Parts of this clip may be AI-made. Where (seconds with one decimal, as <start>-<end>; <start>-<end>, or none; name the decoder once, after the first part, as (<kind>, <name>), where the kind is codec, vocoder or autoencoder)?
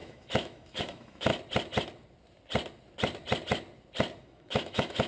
0.0-1.3 (autoencoder, DAC-VAE); 4.2-5.1